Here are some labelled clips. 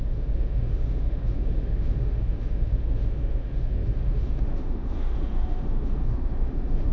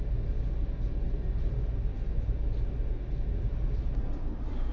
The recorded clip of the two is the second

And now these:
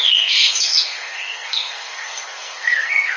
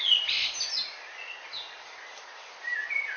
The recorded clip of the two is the second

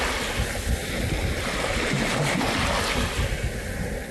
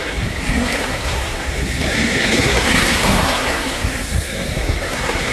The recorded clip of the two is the first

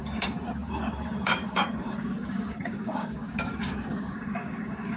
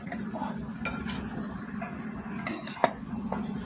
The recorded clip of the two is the second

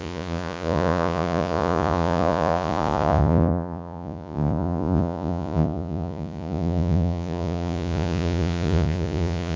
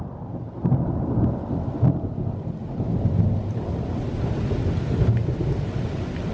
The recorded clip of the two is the second